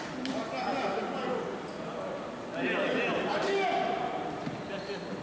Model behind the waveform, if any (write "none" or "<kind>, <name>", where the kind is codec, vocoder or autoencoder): none